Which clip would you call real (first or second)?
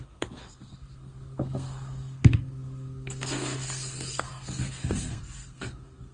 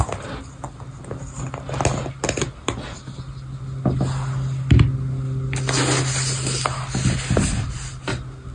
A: second